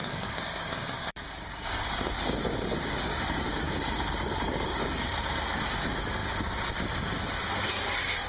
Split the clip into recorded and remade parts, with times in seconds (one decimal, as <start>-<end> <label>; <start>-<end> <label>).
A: 0.0-5.0 remade; 5.0-8.3 recorded